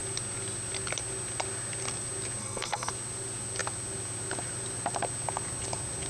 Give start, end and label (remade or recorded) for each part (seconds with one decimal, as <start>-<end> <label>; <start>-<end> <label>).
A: 0.0-2.4 recorded; 2.4-2.9 remade; 2.9-6.1 recorded